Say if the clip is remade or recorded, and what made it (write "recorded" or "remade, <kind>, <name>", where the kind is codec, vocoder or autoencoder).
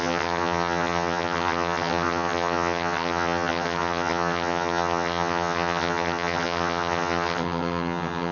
remade, vocoder, HiFi-GAN